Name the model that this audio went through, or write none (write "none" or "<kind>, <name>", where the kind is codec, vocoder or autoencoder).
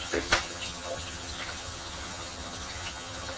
vocoder, HiFi-GAN